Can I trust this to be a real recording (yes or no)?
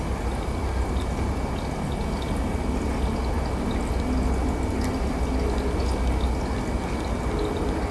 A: yes